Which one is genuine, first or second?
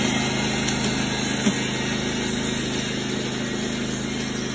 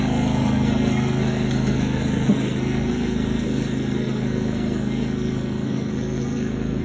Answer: first